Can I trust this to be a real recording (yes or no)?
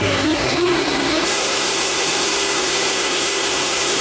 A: no